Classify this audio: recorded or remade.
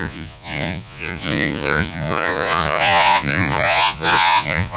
remade